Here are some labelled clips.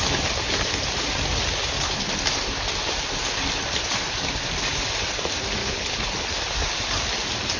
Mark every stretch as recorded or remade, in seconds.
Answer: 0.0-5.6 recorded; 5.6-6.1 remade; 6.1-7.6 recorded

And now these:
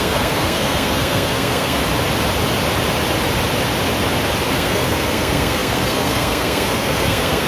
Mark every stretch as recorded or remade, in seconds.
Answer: 0.0-1.8 remade; 1.8-4.5 recorded; 4.5-7.5 remade

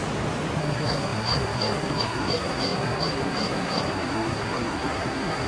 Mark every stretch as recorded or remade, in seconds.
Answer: 0.0-0.6 recorded; 0.6-5.5 remade

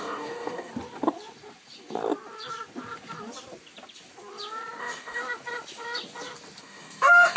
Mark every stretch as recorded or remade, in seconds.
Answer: 0.0-0.7 remade; 0.7-4.8 recorded; 4.8-5.2 remade; 5.2-6.6 recorded; 6.6-7.4 remade

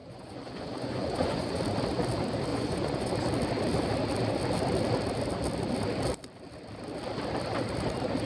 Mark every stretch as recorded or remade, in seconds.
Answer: 0.0-1.6 remade; 1.6-2.5 recorded; 2.5-3.1 remade; 3.1-8.3 recorded

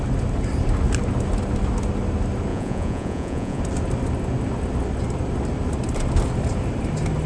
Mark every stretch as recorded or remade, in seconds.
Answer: 0.0-2.5 recorded; 2.5-3.6 remade; 3.6-7.3 recorded